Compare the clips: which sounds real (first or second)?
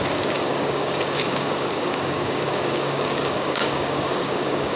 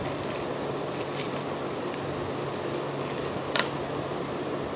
second